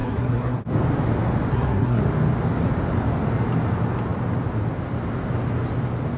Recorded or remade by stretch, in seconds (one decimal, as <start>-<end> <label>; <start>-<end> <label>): 0.0-0.6 remade; 0.6-1.5 recorded; 1.5-2.0 remade; 2.0-6.2 recorded